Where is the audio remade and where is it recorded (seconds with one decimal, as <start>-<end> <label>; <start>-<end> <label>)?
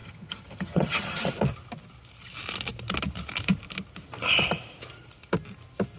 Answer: 0.0-1.3 remade; 1.3-6.0 recorded